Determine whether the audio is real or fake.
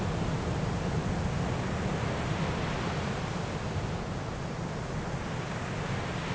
real